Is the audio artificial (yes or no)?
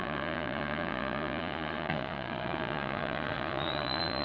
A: yes